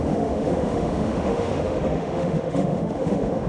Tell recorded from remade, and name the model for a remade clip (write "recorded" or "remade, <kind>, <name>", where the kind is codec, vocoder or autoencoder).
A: remade, autoencoder, DAC-VAE